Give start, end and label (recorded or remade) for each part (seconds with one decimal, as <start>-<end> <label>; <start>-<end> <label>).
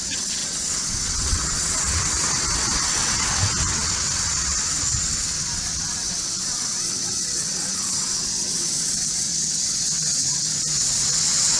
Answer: 0.0-11.6 remade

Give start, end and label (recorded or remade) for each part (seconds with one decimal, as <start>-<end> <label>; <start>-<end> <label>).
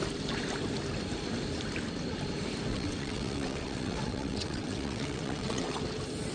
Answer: 0.0-2.7 recorded; 2.7-5.8 remade; 5.8-6.3 recorded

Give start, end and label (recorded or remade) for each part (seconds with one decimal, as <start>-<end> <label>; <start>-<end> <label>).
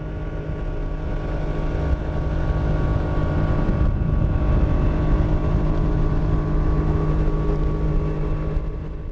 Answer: 0.0-9.1 recorded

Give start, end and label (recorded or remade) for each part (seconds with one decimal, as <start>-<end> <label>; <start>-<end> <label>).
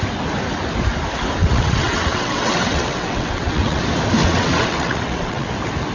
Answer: 0.0-1.4 recorded; 1.4-3.8 remade; 3.8-4.2 recorded; 4.2-5.5 remade; 5.5-5.9 recorded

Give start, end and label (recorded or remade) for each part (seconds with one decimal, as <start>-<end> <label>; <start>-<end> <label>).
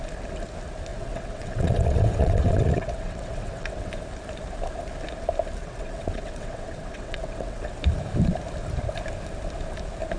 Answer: 0.0-0.9 recorded; 0.9-3.9 remade; 3.9-5.6 recorded; 5.6-7.7 remade; 7.7-10.2 recorded